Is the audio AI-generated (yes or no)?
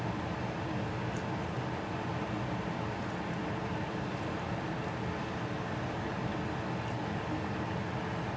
no